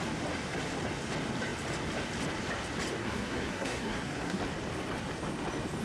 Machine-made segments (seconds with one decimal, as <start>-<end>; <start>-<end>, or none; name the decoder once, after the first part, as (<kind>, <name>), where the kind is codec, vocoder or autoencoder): 3.0-4.4 (codec, SNAC)